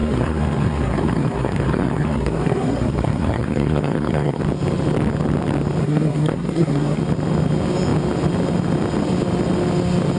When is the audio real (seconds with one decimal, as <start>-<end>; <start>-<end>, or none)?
4.4-5.8; 7.0-10.2